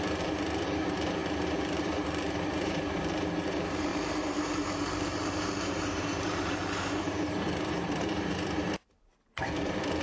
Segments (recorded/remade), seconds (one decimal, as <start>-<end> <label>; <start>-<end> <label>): 0.0-10.0 remade